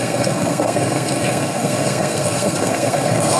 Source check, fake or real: fake